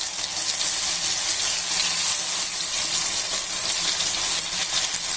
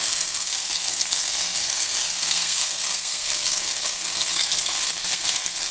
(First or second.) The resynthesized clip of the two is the second